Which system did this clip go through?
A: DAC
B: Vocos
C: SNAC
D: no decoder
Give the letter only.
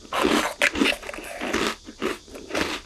D